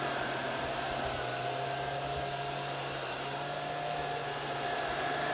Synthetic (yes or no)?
no